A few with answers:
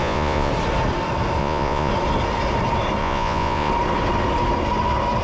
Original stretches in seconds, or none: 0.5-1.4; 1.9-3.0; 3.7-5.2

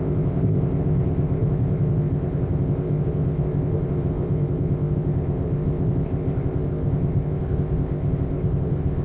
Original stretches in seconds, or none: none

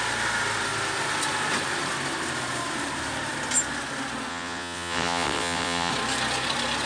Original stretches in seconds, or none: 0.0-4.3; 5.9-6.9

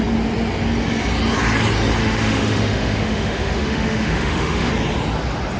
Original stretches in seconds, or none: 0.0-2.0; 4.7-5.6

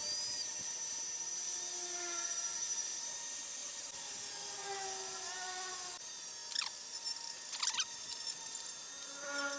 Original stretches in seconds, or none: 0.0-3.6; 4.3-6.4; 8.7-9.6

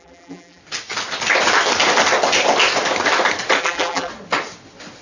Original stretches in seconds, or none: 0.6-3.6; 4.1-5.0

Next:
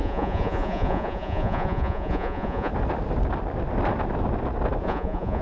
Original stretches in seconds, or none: 2.7-4.8

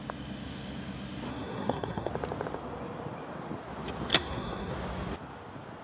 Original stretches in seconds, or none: 0.0-1.3; 2.1-4.1; 4.7-5.8